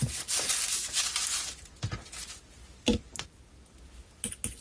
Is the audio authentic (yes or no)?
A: yes